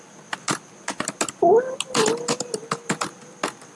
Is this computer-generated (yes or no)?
no